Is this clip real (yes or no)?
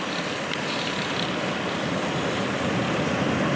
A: yes